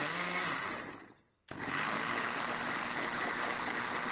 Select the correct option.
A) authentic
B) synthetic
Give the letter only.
A